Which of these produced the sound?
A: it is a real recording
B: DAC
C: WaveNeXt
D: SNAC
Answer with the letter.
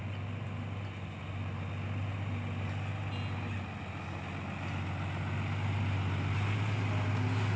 A